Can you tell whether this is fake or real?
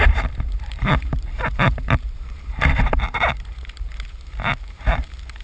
fake